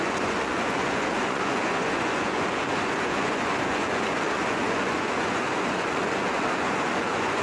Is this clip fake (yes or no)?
yes